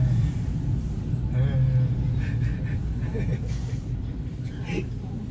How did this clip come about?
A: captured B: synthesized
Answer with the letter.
A